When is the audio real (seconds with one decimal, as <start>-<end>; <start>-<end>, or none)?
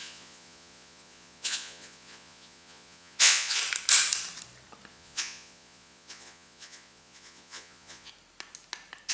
3.6-4.9; 8.1-9.1